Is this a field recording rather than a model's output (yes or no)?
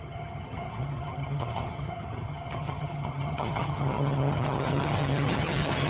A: no